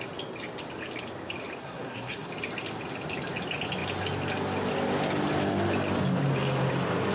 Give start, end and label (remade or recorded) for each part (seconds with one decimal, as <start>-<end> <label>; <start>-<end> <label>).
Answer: 0.0-1.6 recorded; 1.6-2.3 remade; 2.3-7.1 recorded